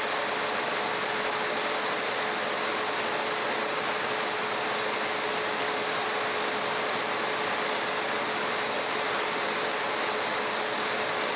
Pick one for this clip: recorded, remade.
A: recorded